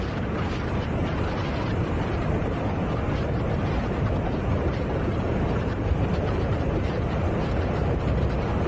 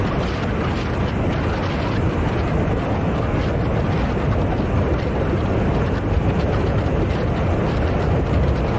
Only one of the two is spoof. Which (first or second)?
first